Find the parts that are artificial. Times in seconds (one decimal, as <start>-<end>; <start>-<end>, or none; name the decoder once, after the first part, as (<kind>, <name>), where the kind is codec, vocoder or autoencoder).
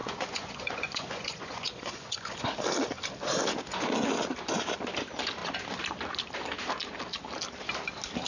0.0-2.4 (vocoder, Vocos)